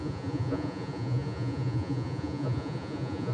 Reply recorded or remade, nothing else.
remade